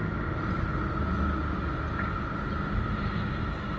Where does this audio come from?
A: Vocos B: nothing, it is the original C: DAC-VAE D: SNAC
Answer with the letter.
B